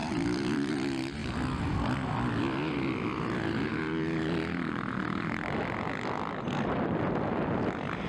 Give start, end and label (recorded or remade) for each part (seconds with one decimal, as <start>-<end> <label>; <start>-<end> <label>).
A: 0.0-0.7 remade; 0.7-1.2 recorded; 1.2-2.3 remade; 2.3-8.1 recorded